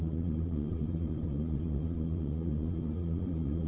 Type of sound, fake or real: fake